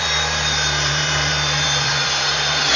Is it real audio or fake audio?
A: fake